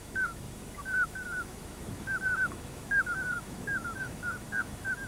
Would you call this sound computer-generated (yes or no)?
yes